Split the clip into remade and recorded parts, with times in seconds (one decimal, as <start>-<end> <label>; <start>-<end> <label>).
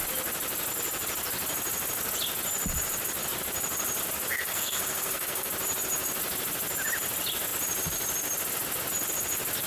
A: 0.0-4.3 recorded; 4.3-5.5 remade; 5.5-9.7 recorded